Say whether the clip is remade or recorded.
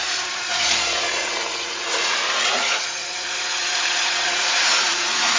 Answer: remade